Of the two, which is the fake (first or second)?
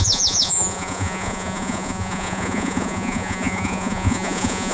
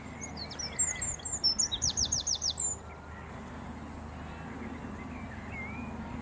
first